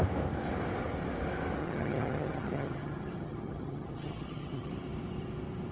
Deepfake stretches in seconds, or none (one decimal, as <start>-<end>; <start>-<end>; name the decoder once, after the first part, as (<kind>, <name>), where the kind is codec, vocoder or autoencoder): 1.6-4.7 (vocoder, HiFi-GAN)